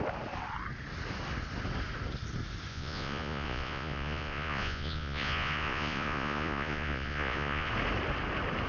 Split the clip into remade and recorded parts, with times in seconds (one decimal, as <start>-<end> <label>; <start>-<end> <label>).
0.0-2.7 recorded; 2.7-7.7 remade; 7.7-8.7 recorded